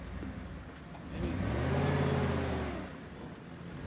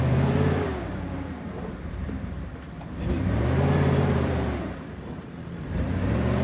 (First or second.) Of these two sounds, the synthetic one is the second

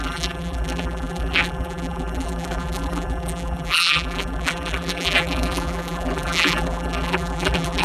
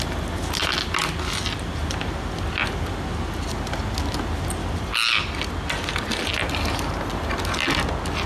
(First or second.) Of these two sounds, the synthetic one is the first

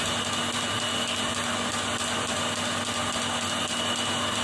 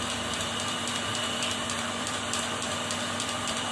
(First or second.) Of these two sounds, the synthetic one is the second